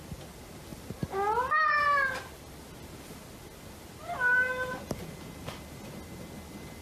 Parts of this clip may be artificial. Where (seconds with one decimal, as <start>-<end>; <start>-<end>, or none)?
none